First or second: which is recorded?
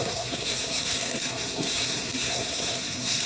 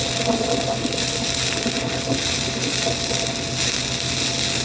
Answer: second